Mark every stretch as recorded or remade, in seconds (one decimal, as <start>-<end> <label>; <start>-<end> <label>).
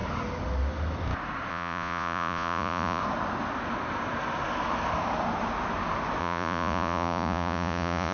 0.0-1.5 recorded; 1.5-3.0 remade; 3.0-6.2 recorded; 6.2-8.1 remade